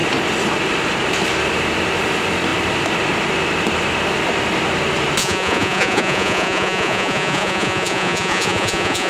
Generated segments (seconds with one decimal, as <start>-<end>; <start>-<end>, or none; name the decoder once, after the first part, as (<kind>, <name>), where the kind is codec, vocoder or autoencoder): 5.2-9.1 (vocoder, Vocos)